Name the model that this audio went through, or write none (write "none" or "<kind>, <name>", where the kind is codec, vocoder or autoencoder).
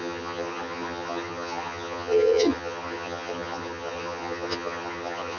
vocoder, HiFi-GAN